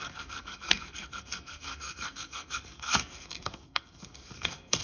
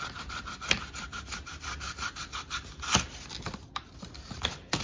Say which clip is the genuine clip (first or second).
second